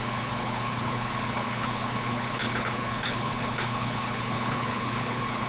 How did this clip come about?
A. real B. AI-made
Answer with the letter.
B